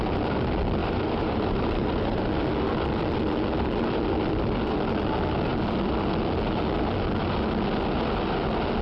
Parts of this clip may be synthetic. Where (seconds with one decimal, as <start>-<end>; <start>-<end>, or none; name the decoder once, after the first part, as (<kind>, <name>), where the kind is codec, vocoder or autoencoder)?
0.8-2.2 (vocoder, BigVGAN v2)